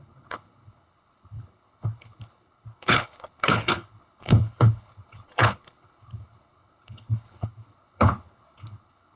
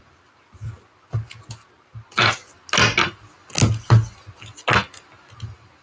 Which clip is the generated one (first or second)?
first